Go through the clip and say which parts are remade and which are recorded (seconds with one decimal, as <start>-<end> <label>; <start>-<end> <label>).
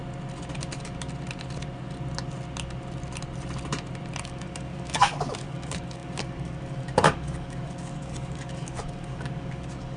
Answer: 0.0-4.2 recorded; 4.2-10.0 remade